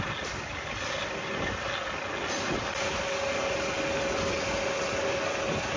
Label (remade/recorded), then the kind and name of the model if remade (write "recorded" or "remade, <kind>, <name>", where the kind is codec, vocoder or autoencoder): recorded